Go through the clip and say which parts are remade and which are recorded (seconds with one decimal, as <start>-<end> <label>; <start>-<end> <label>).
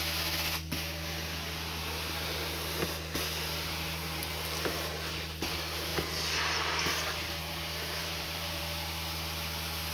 0.0-8.0 recorded; 8.0-8.6 remade; 8.6-9.9 recorded